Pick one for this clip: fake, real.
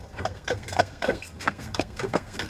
fake